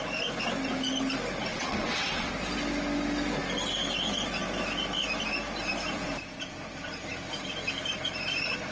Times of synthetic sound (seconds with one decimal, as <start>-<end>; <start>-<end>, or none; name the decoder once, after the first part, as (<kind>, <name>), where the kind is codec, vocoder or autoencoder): 1.5-2.3 (vocoder, WaveNeXt)